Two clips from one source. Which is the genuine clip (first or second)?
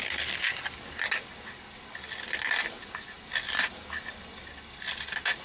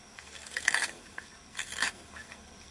first